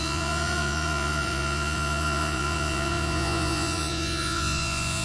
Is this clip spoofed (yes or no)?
yes